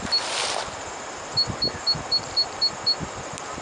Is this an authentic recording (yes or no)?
yes